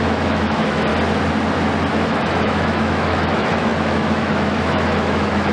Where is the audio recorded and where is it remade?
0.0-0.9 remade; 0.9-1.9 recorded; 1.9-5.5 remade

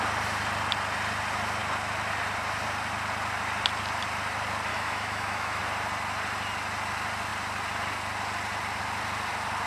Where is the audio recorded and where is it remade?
0.0-4.7 recorded; 4.7-5.6 remade; 5.6-9.7 recorded

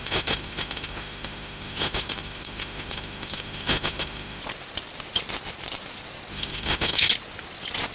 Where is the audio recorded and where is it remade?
0.0-4.4 remade; 4.4-6.3 recorded; 6.3-7.1 remade; 7.1-7.9 recorded

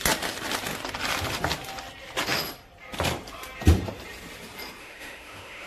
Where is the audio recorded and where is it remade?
0.0-4.8 recorded; 4.8-5.7 remade

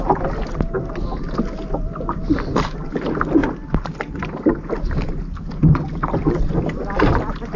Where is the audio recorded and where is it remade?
0.0-7.6 recorded